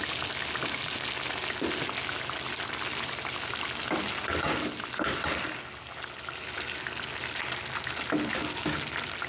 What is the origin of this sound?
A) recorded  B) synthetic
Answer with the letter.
A